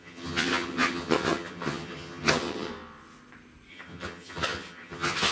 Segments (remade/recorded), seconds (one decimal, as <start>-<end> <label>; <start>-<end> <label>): 0.0-2.7 remade; 2.7-3.7 recorded; 3.7-5.3 remade